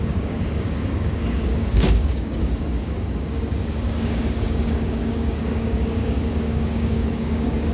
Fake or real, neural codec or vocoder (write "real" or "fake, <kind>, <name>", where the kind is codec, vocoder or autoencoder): fake, codec, DAC